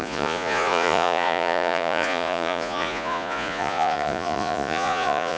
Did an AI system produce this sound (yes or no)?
yes